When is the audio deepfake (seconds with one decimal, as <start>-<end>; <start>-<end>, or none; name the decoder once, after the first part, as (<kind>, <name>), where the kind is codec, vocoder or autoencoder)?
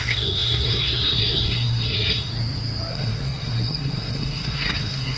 0.0-2.3 (codec, SNAC); 2.9-5.2